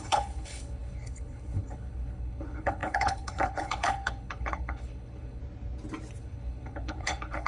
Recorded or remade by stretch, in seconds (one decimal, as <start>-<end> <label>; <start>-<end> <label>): 0.0-5.4 remade; 5.4-6.2 recorded; 6.2-7.5 remade